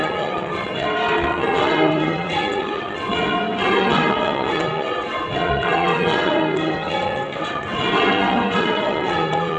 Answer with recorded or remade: remade